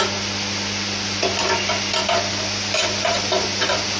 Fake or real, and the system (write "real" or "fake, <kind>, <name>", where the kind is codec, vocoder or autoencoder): real